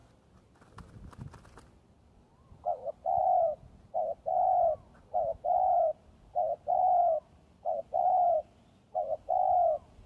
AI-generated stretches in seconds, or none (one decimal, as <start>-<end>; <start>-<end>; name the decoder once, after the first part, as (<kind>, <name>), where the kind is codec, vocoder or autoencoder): none